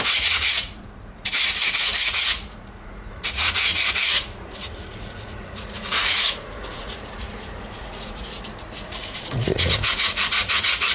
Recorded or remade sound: remade